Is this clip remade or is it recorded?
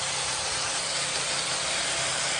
remade